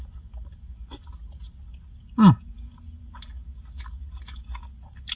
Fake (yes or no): no